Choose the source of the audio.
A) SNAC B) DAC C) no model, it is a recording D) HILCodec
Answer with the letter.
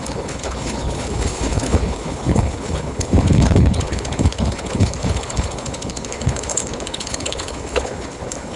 D